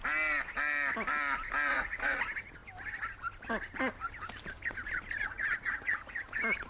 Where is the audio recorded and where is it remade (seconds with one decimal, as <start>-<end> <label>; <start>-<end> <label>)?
0.0-1.7 recorded; 1.7-2.2 remade; 2.2-5.2 recorded; 5.2-6.2 remade; 6.2-6.7 recorded